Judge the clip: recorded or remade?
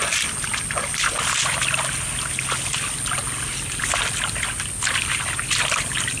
recorded